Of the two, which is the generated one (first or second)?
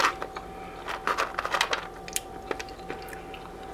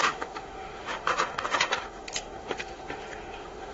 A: second